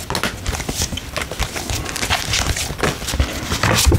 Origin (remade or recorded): recorded